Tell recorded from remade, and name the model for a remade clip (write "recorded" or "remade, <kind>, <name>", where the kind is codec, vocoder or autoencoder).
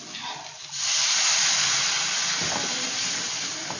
recorded